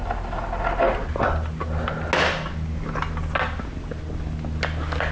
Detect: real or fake real